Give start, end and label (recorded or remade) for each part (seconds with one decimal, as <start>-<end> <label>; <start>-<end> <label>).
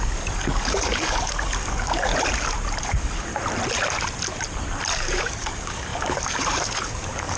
0.0-2.1 remade; 2.1-2.8 recorded; 2.8-3.3 remade; 3.3-4.9 recorded; 4.9-7.4 remade